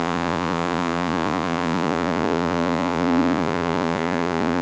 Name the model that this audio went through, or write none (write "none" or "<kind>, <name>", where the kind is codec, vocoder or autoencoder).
vocoder, Vocos